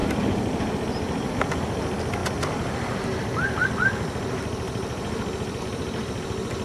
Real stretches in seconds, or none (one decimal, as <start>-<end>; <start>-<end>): 0.0-6.6